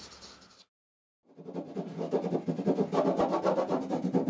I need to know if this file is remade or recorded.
recorded